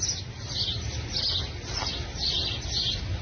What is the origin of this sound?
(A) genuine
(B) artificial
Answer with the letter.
A